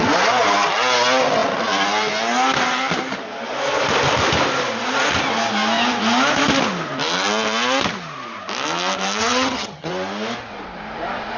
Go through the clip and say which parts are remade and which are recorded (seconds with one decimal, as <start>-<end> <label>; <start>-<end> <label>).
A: 0.0-9.2 recorded; 9.2-9.9 remade; 9.9-11.4 recorded

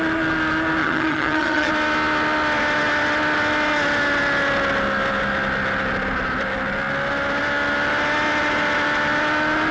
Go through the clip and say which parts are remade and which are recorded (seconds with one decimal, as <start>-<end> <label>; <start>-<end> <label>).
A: 0.0-0.8 recorded; 0.8-1.7 remade; 1.7-9.7 recorded

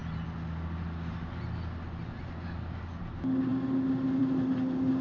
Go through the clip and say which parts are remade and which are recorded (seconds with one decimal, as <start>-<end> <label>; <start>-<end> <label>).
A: 0.0-5.0 recorded